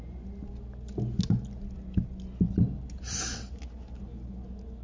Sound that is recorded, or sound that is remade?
recorded